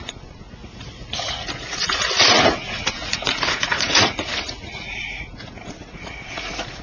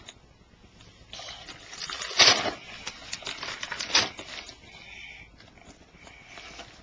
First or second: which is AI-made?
first